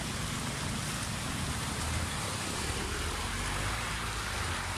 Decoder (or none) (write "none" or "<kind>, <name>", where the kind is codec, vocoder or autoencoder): none